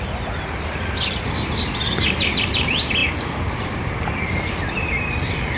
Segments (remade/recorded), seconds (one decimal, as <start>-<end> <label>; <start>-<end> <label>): 0.0-3.0 remade; 3.0-4.1 recorded; 4.1-5.6 remade